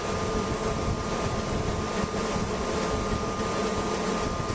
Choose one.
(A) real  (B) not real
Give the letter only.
A